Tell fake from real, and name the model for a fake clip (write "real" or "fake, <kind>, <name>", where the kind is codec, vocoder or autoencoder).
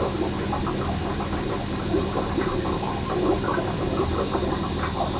real